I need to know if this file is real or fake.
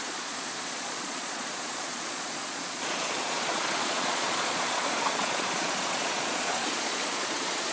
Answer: fake